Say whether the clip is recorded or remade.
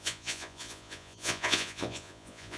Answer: remade